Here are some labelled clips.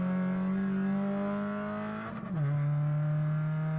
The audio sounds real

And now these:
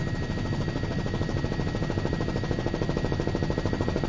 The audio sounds real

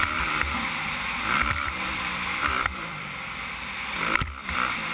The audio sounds fake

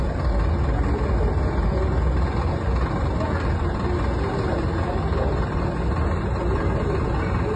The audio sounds real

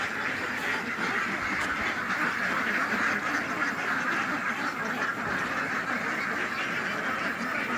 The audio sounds real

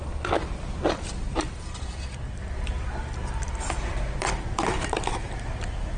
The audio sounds fake